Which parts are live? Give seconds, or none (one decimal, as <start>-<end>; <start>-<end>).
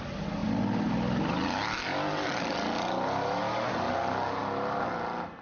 0.0-5.4